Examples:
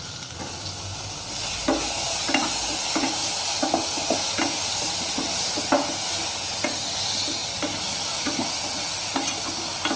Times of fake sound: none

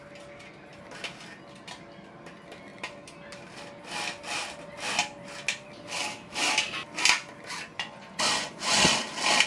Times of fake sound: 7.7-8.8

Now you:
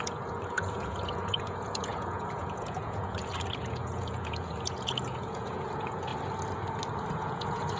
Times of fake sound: 0.0-6.1; 7.1-7.8

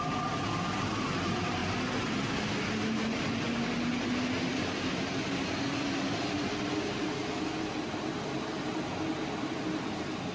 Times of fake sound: none

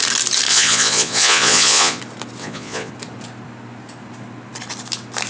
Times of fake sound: 0.5-2.0; 2.4-2.9